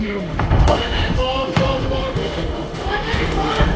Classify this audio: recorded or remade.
remade